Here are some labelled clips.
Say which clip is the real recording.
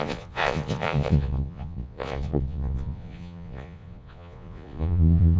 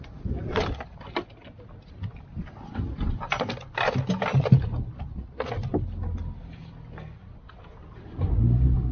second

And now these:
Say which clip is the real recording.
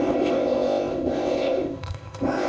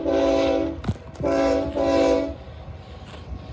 second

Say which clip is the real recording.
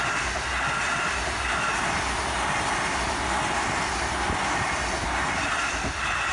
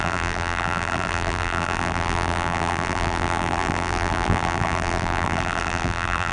first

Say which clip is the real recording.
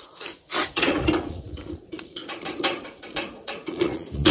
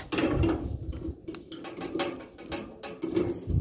second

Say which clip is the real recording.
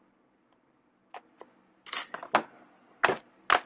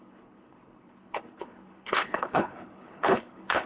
first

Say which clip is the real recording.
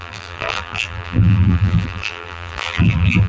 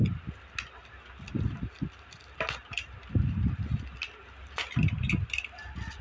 second